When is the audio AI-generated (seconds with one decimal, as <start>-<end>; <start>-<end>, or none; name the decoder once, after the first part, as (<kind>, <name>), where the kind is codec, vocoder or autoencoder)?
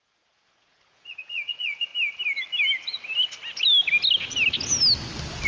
0.0-1.9 (vocoder, Vocos)